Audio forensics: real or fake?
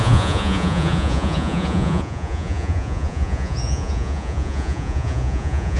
fake